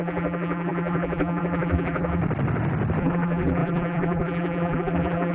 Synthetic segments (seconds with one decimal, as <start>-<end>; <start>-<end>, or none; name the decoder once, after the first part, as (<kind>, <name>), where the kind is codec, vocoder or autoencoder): 0.0-2.2 (vocoder, BigVGAN v2); 3.0-5.3